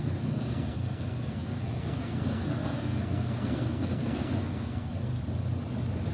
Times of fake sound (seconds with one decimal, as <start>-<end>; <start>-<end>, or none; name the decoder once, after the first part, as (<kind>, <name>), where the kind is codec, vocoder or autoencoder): 0.0-5.1 (codec, SNAC)